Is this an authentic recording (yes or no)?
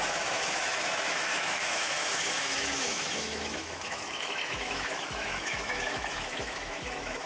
no